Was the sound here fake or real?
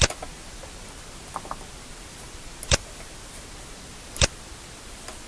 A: real